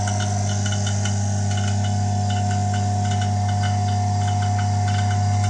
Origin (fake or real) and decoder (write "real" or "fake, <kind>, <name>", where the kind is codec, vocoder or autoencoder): real